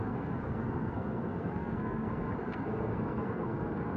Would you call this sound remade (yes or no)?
yes